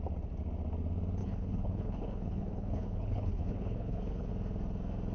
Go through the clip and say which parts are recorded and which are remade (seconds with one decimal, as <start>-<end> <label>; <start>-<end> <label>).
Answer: 0.0-1.2 recorded; 1.2-4.3 remade; 4.3-5.1 recorded